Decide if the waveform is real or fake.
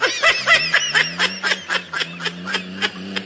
real